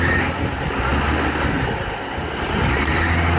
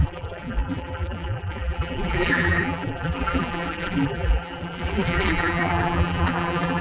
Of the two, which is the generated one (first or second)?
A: second